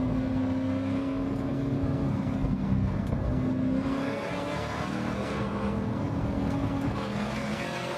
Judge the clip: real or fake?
fake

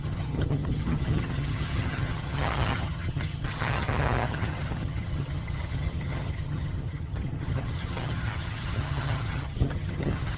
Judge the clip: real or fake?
fake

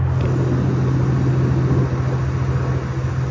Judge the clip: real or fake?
real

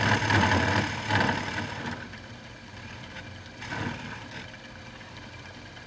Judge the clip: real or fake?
real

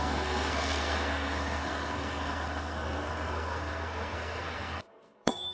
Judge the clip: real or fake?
fake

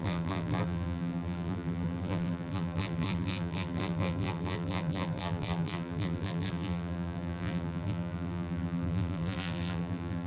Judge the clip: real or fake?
fake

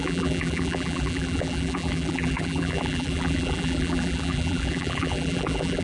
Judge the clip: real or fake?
fake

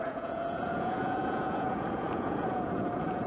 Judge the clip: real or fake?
fake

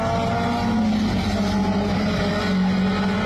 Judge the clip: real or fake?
real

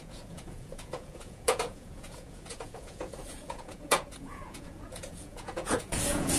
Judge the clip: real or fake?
fake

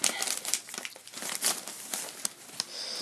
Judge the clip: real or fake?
real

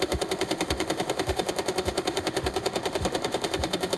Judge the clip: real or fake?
fake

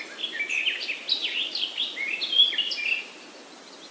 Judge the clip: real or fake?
real